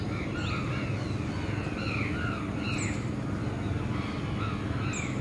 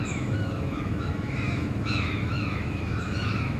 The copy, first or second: second